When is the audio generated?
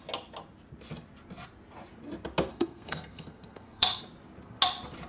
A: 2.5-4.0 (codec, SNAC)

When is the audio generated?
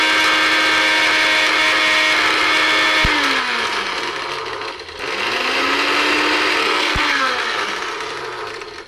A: 6.6-7.2 (codec, SNAC)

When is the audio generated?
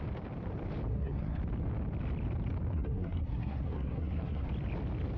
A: 0.9-1.4 (codec, SNAC); 2.7-4.5